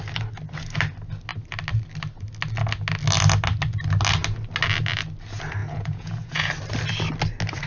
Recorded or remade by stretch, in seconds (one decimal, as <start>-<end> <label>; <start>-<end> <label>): 0.0-5.6 recorded; 5.6-6.5 remade; 6.5-7.7 recorded